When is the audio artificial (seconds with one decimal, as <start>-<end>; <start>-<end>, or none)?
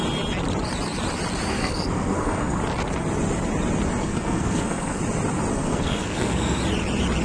1.5-2.6; 4.0-5.0; 5.5-6.6